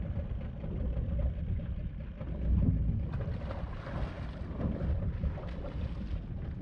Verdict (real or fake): fake